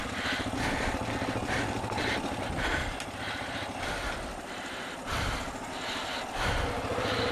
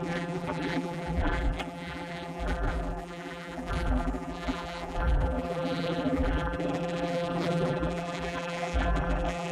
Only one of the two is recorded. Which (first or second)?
first